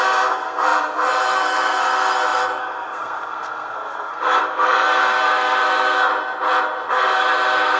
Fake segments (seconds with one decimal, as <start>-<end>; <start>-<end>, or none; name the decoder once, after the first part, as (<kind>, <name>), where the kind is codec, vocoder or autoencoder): 0.0-6.1 (codec, SNAC); 6.9-7.8